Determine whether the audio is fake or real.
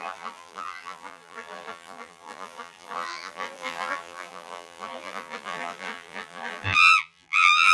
fake